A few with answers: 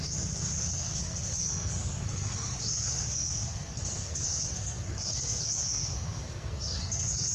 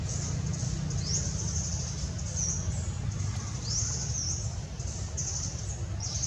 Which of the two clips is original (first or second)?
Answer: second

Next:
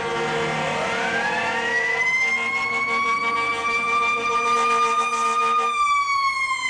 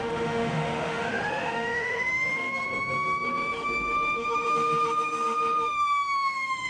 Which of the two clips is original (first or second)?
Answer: first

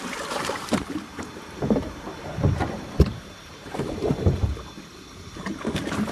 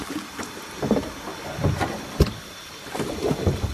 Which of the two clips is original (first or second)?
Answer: second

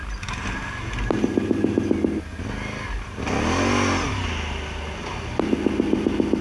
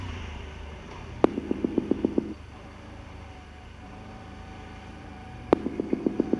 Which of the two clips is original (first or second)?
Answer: first